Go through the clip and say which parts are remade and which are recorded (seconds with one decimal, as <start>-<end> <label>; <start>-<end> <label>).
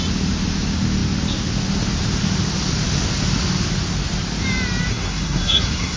0.0-4.9 recorded; 4.9-6.0 remade